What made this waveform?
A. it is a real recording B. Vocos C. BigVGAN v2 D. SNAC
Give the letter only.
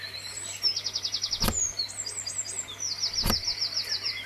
A